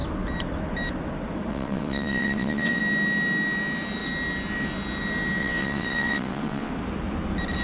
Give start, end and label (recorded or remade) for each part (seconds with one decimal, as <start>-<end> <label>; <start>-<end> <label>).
0.0-1.5 recorded; 1.5-2.8 remade; 2.8-5.4 recorded; 5.4-6.7 remade; 6.7-7.6 recorded